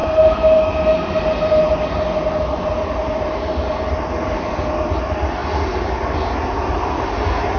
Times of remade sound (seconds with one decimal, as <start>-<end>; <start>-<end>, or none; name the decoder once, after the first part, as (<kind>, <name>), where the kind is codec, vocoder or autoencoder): none